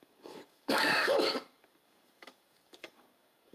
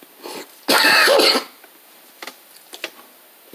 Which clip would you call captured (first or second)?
second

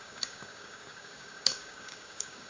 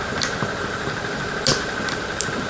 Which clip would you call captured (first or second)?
second